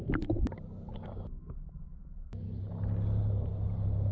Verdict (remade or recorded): recorded